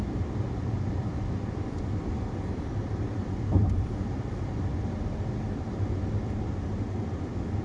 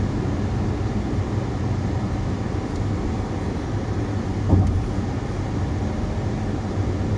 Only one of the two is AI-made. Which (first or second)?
first